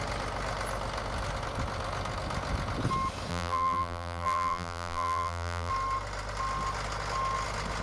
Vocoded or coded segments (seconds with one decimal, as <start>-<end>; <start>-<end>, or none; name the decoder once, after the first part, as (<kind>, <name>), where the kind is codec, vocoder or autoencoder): 3.3-5.7 (vocoder, BigVGAN v2)